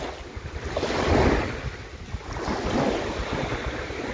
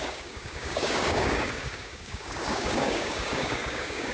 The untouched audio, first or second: first